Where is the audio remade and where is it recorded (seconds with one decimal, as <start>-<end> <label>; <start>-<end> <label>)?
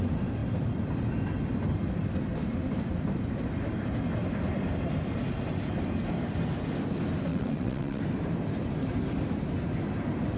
0.0-7.3 recorded; 7.3-8.0 remade; 8.0-10.4 recorded